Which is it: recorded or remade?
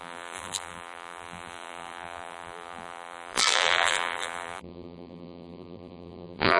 remade